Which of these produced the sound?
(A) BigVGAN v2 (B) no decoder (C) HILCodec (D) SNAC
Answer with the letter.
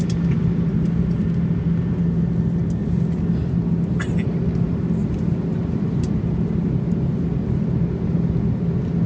B